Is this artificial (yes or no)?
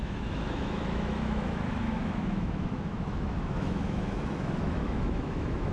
yes